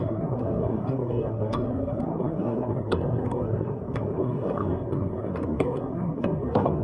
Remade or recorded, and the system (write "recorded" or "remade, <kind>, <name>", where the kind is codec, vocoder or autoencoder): remade, codec, SNAC